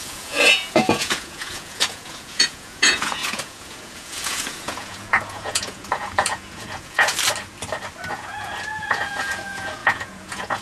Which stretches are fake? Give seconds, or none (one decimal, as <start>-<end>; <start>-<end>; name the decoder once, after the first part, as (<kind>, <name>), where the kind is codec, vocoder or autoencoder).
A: 0.0-7.1 (vocoder, Vocos); 8.1-10.6